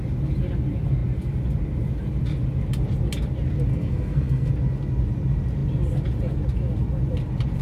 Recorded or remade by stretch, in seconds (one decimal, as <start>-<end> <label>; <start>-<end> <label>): 0.0-3.7 recorded; 3.7-4.5 remade; 4.5-7.6 recorded